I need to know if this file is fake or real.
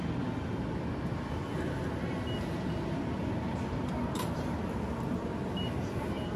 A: real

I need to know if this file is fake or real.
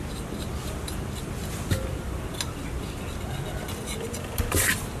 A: real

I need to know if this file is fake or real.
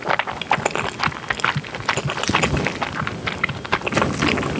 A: real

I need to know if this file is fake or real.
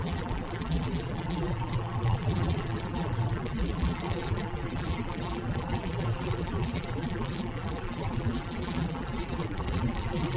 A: fake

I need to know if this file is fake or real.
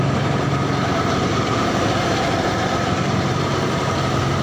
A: fake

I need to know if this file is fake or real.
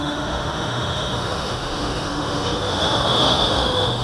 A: fake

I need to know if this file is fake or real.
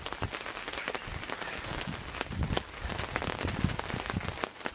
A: real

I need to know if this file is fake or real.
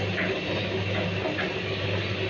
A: real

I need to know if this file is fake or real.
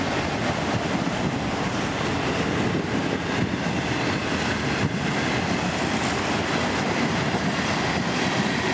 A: real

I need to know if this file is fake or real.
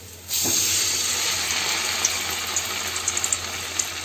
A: real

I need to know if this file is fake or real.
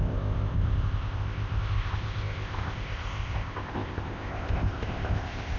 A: fake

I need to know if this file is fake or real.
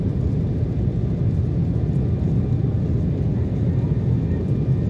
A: real